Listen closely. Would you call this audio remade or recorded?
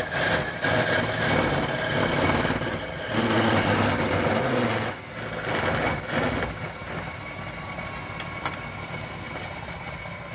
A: recorded